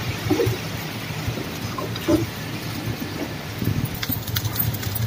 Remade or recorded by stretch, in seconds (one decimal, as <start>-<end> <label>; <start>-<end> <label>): 0.0-5.1 recorded